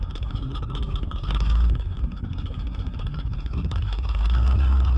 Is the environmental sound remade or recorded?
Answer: remade